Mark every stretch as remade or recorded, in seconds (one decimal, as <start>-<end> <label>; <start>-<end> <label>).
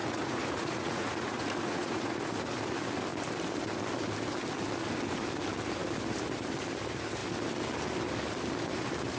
0.0-2.2 remade; 2.2-9.2 recorded